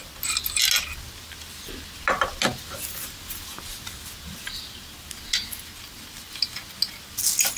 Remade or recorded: recorded